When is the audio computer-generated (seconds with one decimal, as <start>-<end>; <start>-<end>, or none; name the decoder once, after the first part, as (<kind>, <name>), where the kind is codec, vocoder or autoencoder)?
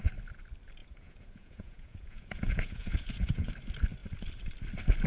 0.8-3.5 (vocoder, Vocos)